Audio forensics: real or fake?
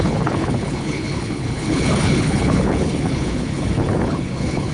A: fake